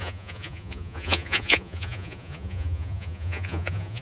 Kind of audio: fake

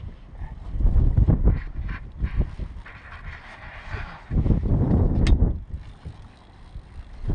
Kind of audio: real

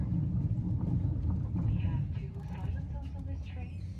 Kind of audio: real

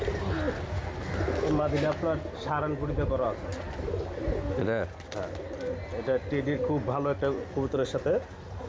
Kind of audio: real